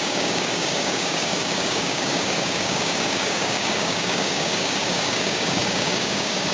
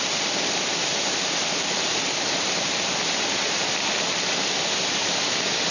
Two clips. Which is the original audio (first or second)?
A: second